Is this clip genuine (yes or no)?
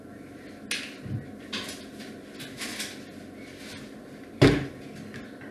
yes